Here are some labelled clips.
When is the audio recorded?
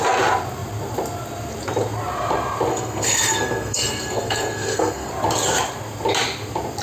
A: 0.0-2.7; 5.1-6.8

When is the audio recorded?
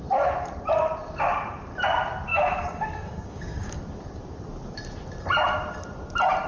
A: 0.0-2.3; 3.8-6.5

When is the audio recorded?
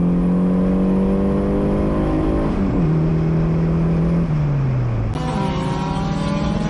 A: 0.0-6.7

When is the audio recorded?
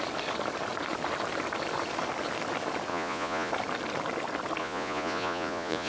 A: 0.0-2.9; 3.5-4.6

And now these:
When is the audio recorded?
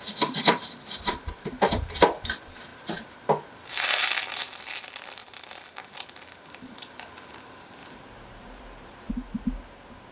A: 0.0-0.6; 1.5-5.2; 5.8-7.8; 9.1-10.1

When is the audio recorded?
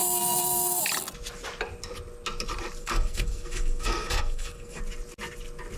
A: 0.8-2.8; 4.8-5.8